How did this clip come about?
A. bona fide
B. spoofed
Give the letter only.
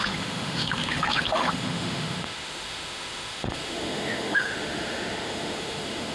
B